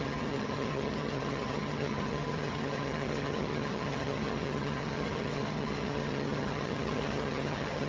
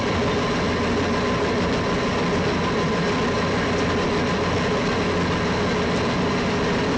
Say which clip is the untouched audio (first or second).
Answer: second